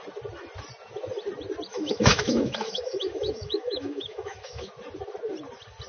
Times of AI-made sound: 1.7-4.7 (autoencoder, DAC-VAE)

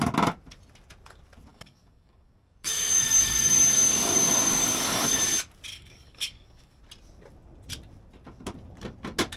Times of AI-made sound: 1.5-5.2 (codec, DAC); 5.7-6.8

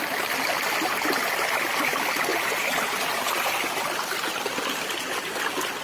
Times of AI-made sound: none

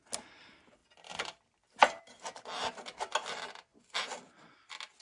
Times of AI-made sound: 0.8-2.0 (vocoder, BigVGAN v2); 3.7-4.5

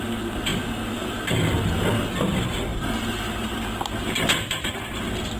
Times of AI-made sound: none